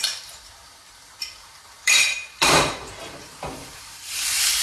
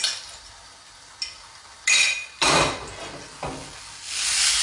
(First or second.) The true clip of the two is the second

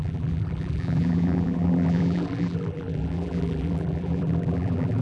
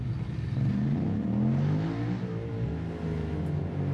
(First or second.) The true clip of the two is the second